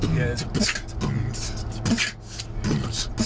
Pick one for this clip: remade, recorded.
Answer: recorded